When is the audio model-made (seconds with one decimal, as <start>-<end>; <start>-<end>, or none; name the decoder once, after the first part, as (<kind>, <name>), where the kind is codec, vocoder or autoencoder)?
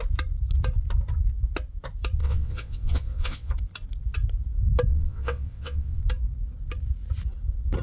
2.2-3.5 (vocoder, WaveNeXt); 4.9-6.0